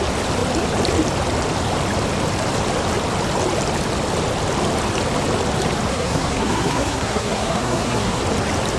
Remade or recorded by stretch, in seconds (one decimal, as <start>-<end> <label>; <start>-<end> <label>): 0.0-5.9 recorded; 5.9-8.2 remade; 8.2-8.8 recorded